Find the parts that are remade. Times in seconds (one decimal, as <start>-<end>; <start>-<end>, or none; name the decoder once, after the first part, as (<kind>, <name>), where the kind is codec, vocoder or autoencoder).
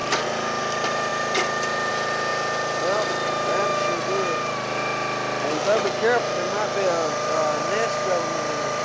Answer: 0.6-1.1 (vocoder, BigVGAN v2); 1.9-2.3; 7.1-8.8